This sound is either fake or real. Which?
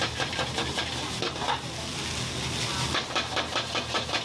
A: real